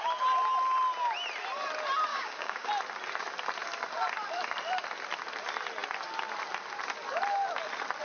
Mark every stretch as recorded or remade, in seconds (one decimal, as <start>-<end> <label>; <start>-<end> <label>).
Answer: 0.0-2.1 recorded; 2.1-2.7 remade; 2.7-8.0 recorded